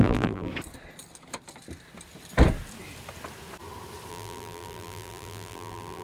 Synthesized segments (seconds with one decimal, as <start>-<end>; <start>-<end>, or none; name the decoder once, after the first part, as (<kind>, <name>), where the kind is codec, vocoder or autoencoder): 0.0-0.5 (vocoder, BigVGAN v2); 4.1-6.0